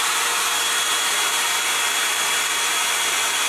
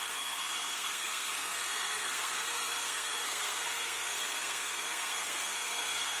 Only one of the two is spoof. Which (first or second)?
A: second